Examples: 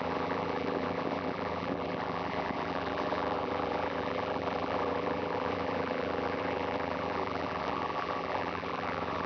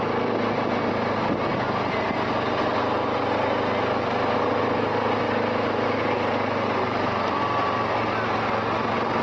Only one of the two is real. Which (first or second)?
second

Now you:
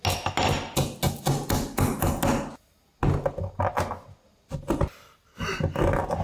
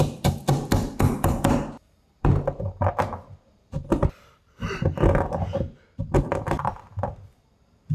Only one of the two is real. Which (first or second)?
first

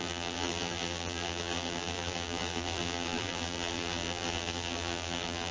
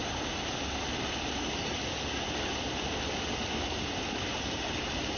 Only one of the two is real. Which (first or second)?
second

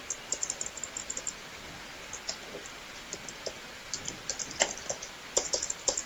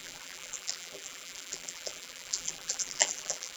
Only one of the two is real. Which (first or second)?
first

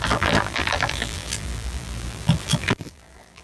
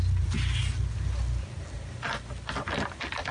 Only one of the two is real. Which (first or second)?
second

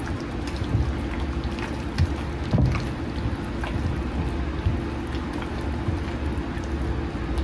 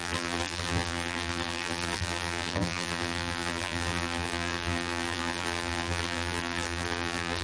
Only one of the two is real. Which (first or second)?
first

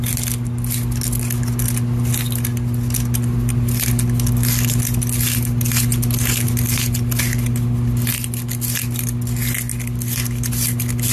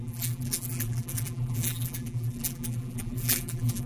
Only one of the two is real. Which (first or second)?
first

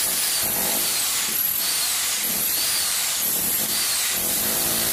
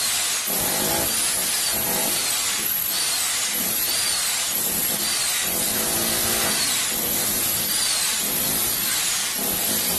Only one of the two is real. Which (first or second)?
second